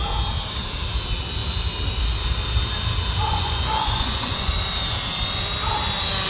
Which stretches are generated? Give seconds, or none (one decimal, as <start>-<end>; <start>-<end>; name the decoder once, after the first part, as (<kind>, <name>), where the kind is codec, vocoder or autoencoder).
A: 3.3-4.5 (vocoder, Vocos)